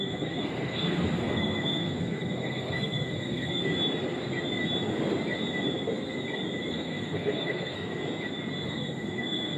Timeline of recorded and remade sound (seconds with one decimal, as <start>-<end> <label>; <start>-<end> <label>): 0.0-3.6 remade; 3.6-6.7 recorded; 6.7-8.0 remade; 8.0-8.7 recorded; 8.7-9.6 remade